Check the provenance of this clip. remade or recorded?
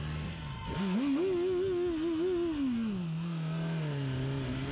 recorded